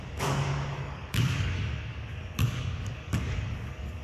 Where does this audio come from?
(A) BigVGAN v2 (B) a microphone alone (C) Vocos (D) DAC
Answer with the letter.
D